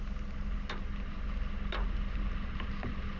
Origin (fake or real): real